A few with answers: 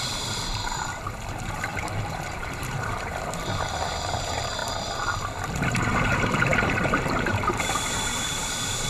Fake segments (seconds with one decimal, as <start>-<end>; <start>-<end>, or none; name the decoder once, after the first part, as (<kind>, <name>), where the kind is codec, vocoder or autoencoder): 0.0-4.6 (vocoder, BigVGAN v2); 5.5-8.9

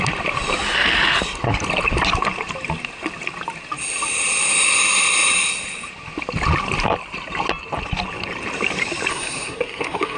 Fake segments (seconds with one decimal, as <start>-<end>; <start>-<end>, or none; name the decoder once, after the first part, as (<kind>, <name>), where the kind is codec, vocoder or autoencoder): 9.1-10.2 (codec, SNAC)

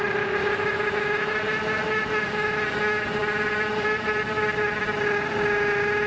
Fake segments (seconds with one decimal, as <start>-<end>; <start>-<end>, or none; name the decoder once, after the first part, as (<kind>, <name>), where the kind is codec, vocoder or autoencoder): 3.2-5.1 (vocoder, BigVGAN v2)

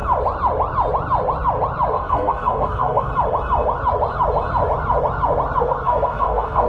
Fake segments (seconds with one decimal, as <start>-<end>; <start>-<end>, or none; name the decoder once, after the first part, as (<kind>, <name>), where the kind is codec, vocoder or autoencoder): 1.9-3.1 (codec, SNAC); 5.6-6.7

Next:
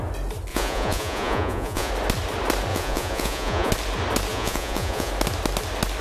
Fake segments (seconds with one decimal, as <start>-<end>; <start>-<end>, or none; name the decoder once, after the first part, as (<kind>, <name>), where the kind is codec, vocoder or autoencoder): 0.5-1.9 (vocoder, Vocos); 2.7-3.7; 4.3-5.1

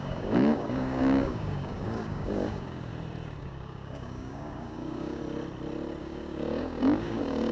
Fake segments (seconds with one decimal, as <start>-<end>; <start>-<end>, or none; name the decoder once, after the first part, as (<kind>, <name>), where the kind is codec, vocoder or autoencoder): 0.0-2.9 (codec, DAC); 3.4-5.2; 6.0-7.5